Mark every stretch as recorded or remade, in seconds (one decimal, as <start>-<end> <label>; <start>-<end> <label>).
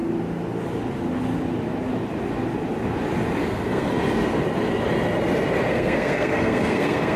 0.0-3.4 recorded; 3.4-3.9 remade; 3.9-5.7 recorded; 5.7-7.2 remade